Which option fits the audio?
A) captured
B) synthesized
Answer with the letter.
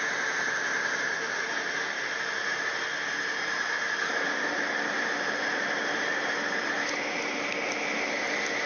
A